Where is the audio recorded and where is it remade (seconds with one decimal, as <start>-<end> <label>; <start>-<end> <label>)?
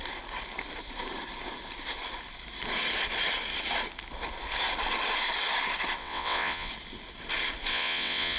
0.0-6.0 recorded; 6.0-6.7 remade; 6.7-7.7 recorded; 7.7-8.4 remade